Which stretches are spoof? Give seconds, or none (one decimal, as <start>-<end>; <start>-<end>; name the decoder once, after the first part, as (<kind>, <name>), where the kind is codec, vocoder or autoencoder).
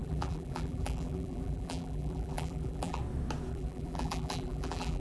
0.0-3.0 (vocoder, BigVGAN v2); 3.5-5.0